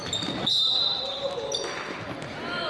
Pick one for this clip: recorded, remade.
recorded